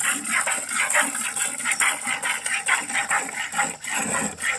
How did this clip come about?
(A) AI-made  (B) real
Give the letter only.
B